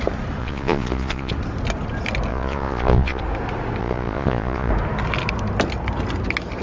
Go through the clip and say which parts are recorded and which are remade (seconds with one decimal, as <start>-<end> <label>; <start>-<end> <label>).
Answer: 0.0-0.4 recorded; 0.4-1.3 remade; 1.3-2.3 recorded; 2.3-3.2 remade; 3.2-3.8 recorded; 3.8-4.7 remade; 4.7-6.6 recorded